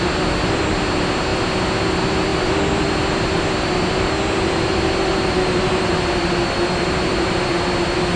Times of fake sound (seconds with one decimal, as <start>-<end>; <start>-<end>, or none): none